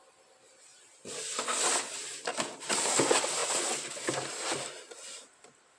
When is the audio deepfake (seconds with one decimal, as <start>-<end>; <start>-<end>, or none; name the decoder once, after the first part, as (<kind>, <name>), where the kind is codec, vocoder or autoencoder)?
none